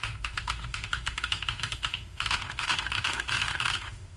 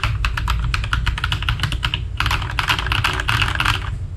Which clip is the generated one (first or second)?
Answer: first